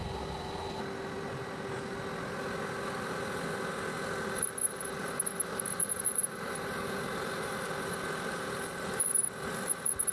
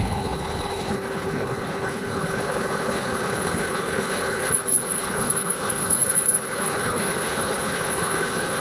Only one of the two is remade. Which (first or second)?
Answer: second